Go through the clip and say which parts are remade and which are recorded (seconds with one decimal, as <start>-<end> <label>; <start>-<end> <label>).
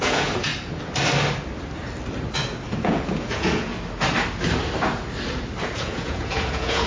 0.0-0.5 remade; 0.5-2.7 recorded; 2.7-3.7 remade; 3.7-5.6 recorded; 5.6-6.9 remade